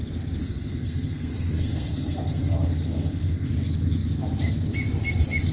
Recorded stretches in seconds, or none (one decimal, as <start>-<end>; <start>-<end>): 0.0-0.4; 3.5-5.5